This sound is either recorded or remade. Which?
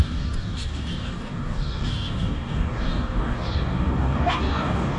remade